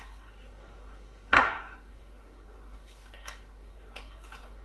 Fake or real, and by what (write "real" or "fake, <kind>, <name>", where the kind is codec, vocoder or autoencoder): fake, codec, SNAC